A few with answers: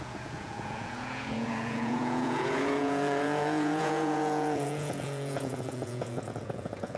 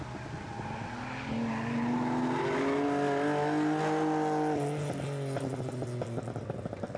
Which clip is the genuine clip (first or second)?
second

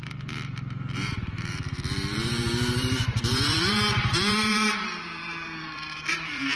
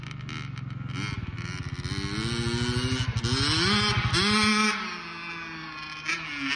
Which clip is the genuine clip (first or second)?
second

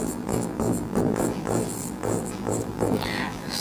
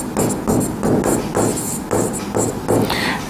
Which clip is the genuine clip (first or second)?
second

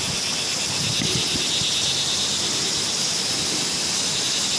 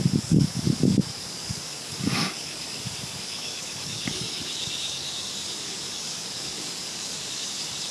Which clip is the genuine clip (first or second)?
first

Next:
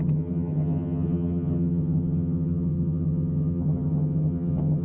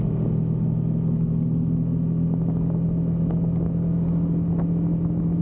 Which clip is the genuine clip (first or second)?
second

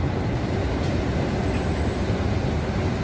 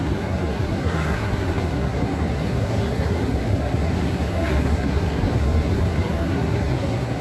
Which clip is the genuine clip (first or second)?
first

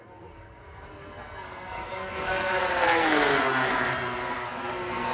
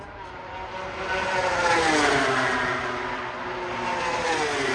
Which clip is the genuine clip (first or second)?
second